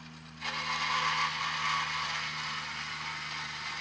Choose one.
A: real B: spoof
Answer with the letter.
A